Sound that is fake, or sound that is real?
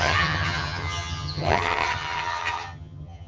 fake